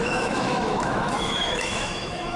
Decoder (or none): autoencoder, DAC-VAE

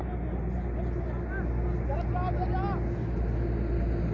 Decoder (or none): none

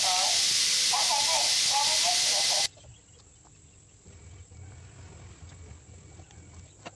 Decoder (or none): none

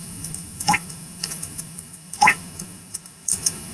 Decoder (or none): autoencoder, DAC-VAE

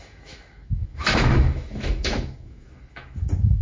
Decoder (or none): autoencoder, DAC-VAE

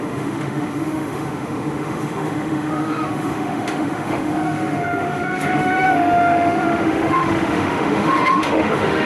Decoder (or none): autoencoder, DAC-VAE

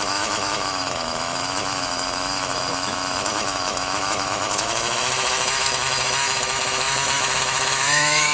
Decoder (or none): autoencoder, DAC-VAE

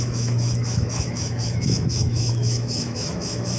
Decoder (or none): autoencoder, DAC-VAE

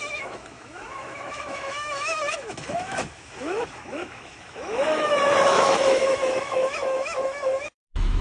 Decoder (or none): autoencoder, DAC-VAE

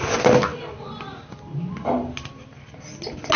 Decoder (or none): none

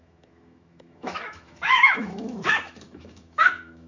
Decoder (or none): autoencoder, DAC-VAE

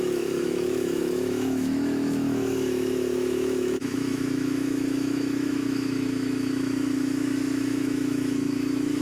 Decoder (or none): autoencoder, DAC-VAE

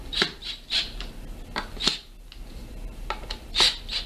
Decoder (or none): none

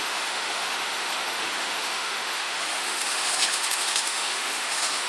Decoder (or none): autoencoder, DAC-VAE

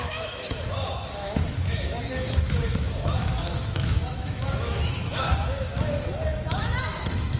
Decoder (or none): autoencoder, DAC-VAE